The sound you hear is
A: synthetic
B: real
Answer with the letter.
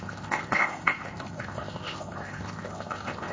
A